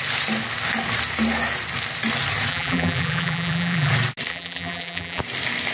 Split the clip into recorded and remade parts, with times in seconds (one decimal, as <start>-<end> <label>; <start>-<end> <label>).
0.0-2.5 recorded; 2.5-3.9 remade; 3.9-4.3 recorded; 4.3-5.2 remade; 5.2-5.7 recorded

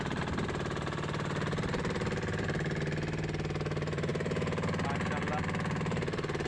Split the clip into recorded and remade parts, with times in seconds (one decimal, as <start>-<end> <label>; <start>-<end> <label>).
0.0-4.1 remade; 4.1-5.8 recorded; 5.8-6.5 remade

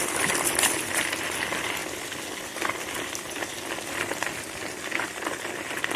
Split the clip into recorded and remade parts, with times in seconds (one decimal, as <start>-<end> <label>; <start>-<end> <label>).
0.0-6.0 recorded